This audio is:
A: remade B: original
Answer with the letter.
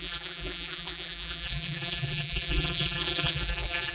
A